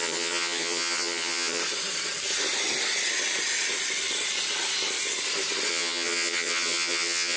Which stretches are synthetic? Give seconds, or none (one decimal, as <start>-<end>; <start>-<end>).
0.0-1.6; 5.7-7.4

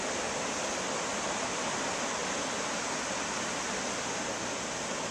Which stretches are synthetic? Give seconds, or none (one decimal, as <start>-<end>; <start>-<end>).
none

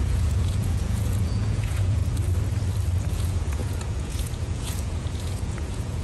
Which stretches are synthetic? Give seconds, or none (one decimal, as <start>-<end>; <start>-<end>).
0.0-2.0; 3.1-6.0

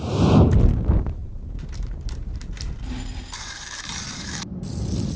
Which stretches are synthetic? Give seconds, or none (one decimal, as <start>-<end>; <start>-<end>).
1.2-4.3

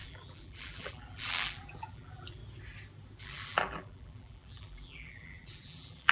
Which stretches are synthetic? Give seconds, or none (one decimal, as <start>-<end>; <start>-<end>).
0.0-2.4; 3.2-6.1

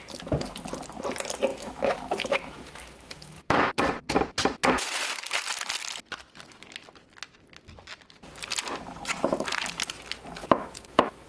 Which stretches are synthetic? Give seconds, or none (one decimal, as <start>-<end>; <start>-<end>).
1.5-3.7; 10.4-11.3